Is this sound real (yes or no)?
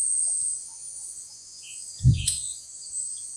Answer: no